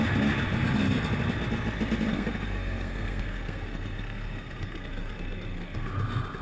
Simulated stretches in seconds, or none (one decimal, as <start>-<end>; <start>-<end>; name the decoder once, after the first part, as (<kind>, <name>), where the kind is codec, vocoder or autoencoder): 2.1-5.9 (codec, SNAC)